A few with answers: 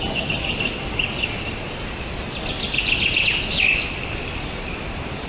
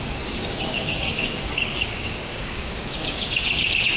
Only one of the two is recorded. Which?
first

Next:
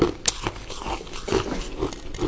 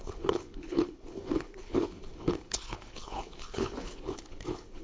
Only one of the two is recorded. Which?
first